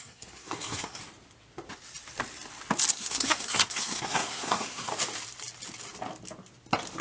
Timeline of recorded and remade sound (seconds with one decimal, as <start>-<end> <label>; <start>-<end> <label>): 0.0-1.0 remade; 1.0-2.9 recorded; 2.9-4.9 remade; 4.9-7.0 recorded